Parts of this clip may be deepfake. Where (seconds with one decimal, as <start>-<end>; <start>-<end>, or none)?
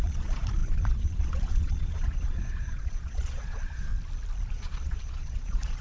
0.0-3.9; 4.5-5.8